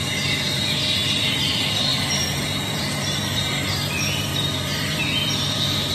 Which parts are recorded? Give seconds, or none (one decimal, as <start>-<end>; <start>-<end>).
none